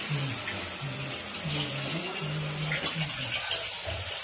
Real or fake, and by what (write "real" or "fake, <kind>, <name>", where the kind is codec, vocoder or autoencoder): real